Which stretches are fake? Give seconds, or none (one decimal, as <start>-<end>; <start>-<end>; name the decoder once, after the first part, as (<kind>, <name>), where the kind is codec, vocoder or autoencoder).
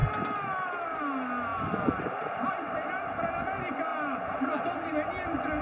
0.0-1.0 (vocoder, BigVGAN v2); 1.5-2.5; 3.9-4.5